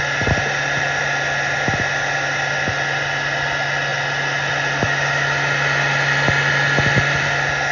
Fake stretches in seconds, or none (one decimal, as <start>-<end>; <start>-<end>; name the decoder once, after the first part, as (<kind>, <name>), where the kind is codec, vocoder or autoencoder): none